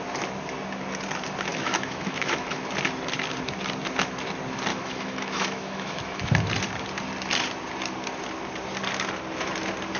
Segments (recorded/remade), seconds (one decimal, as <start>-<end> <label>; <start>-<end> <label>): 0.0-1.5 recorded; 1.5-2.7 remade; 2.7-4.7 recorded; 4.7-6.2 remade; 6.2-10.0 recorded